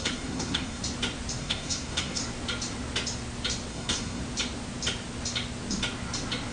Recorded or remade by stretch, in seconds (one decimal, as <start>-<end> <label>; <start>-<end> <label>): 0.0-0.8 remade; 0.8-1.4 recorded; 1.4-2.2 remade; 2.2-3.7 recorded; 3.7-4.2 remade; 4.2-6.5 recorded